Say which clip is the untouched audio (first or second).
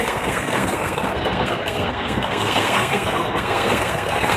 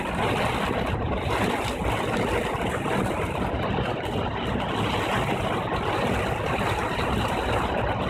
second